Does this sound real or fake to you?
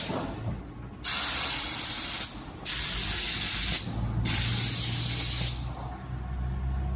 real